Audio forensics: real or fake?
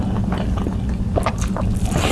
real